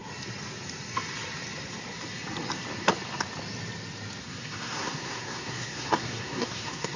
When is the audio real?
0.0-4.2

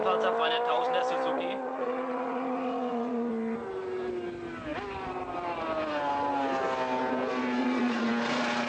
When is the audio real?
0.0-1.6; 3.3-7.6; 8.1-8.7